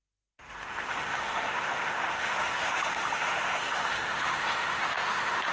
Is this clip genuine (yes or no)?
no